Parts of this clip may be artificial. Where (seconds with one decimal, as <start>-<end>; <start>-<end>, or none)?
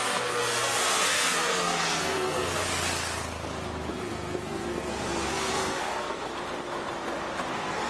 0.0-2.6; 3.9-6.3; 7.5-7.9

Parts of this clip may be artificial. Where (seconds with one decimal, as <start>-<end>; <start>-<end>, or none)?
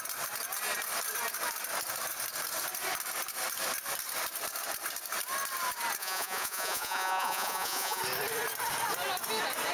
6.0-8.0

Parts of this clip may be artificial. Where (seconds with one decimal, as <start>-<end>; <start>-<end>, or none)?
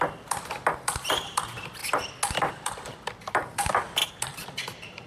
0.0-1.8; 2.5-5.1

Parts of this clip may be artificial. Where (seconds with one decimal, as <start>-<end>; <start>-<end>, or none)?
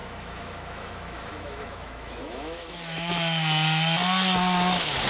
0.0-3.1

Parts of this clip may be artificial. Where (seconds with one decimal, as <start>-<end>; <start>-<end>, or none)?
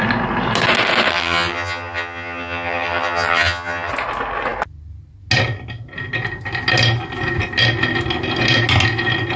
1.1-3.9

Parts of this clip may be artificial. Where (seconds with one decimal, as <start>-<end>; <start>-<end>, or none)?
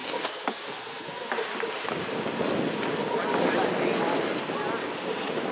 0.0-1.3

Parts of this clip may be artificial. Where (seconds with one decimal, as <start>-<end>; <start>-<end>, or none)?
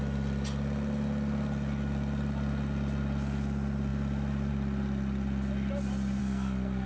6.2-6.9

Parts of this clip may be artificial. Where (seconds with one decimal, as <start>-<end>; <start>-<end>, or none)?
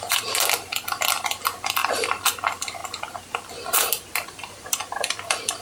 none